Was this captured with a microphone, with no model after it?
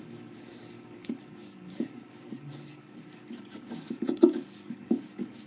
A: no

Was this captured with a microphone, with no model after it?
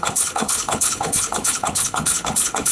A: no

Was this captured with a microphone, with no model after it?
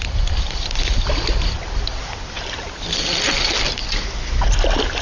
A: yes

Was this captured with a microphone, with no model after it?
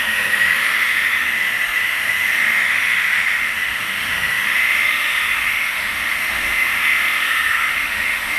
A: no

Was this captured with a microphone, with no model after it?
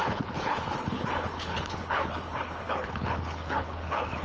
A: no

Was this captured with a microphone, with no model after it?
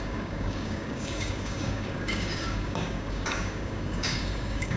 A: no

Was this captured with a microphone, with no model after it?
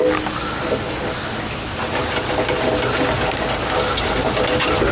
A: yes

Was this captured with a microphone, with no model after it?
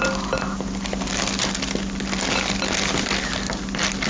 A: yes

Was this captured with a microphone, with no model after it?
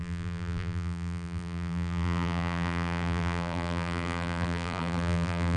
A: no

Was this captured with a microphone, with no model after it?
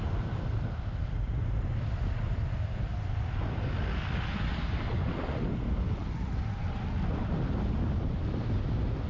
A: yes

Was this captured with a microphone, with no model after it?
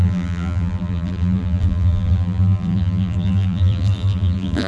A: no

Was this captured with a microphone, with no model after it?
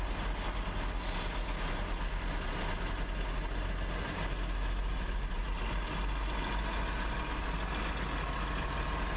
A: yes